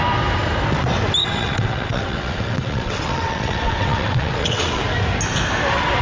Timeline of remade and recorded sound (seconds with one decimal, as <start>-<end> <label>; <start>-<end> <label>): 0.0-1.2 recorded; 1.2-4.8 remade; 4.8-6.0 recorded